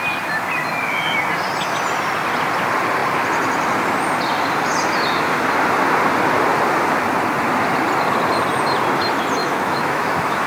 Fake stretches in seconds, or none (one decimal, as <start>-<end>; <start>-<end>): 9.4-10.5